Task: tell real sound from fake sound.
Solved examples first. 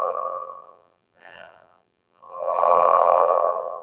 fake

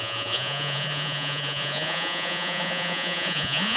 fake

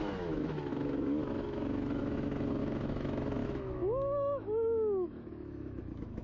fake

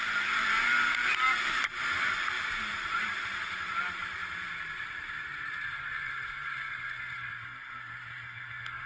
fake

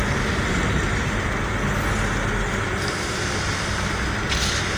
real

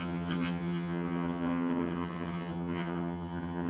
fake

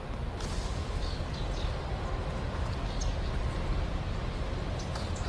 real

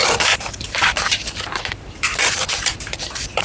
fake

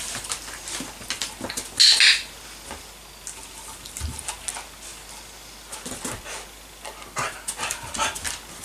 real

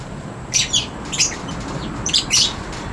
fake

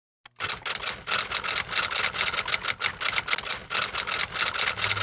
real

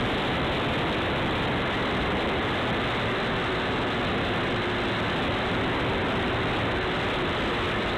real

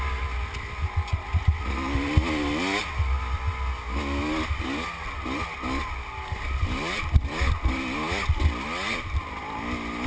real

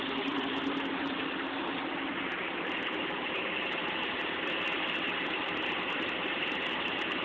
real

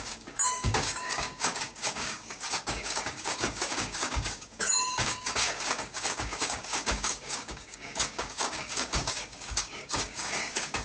fake